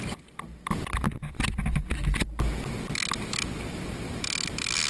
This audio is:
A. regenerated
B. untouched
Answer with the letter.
B